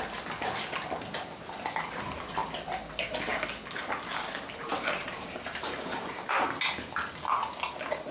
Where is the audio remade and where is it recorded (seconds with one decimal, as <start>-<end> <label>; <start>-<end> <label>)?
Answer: 0.0-4.7 recorded; 4.7-6.6 remade; 6.6-8.1 recorded